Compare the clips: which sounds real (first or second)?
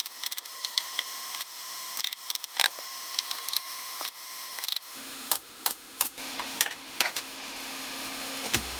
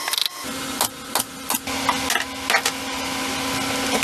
second